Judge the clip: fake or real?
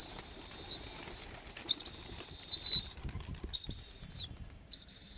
real